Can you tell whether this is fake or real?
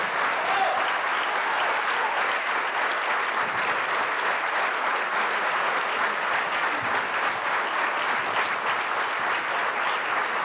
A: real